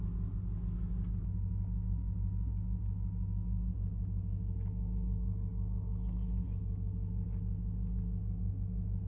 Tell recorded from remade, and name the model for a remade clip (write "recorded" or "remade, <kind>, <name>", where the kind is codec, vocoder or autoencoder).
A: recorded